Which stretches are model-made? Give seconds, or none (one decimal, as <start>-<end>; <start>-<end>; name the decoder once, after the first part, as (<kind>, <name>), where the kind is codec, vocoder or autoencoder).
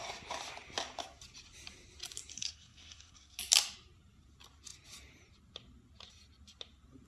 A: 2.3-3.4 (codec, SNAC)